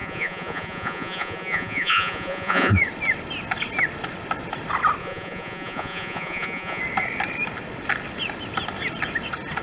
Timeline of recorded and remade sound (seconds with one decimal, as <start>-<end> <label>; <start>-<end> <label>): 0.0-2.7 remade; 2.7-5.0 recorded; 5.0-6.8 remade; 6.8-9.6 recorded